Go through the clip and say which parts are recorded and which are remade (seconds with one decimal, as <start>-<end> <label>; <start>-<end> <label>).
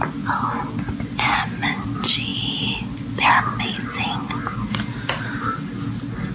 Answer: 0.0-6.3 recorded